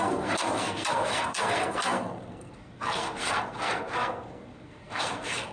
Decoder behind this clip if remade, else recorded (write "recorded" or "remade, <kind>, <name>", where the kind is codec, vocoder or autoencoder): remade, codec, SNAC